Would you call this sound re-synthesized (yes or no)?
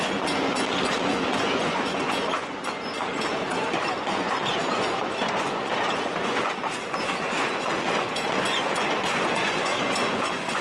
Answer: yes